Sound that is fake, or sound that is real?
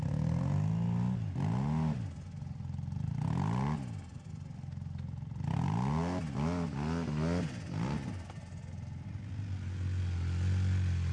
real